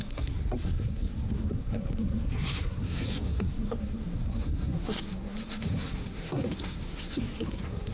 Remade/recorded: remade